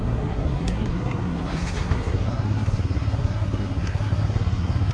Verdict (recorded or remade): remade